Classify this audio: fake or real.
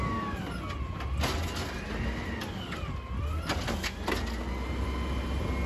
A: real